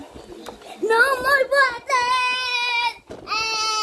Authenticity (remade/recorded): recorded